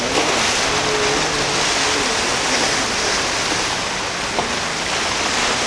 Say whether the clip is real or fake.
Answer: real